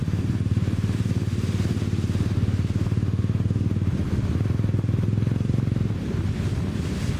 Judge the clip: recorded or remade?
recorded